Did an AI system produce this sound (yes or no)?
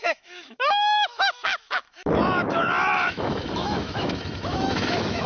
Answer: yes